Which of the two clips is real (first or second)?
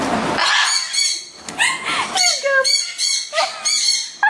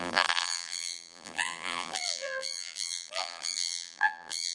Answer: first